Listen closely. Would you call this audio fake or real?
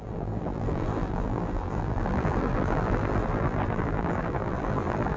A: fake